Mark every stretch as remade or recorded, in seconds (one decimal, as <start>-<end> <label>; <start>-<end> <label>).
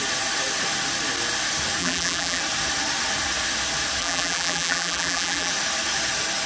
0.0-1.8 recorded; 1.8-2.4 remade; 2.4-4.0 recorded; 4.0-5.5 remade; 5.5-6.5 recorded